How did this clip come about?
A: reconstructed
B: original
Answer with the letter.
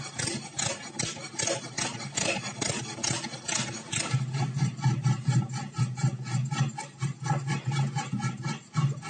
B